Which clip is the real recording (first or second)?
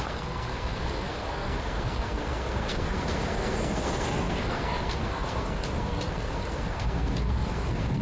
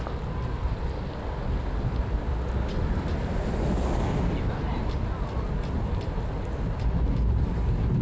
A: second